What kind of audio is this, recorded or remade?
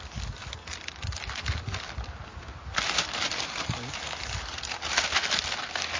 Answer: recorded